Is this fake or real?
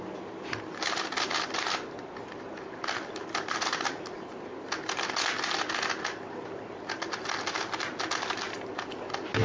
real